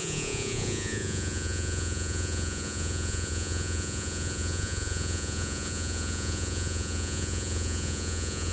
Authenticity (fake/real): fake